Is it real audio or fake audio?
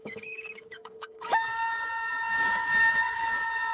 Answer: fake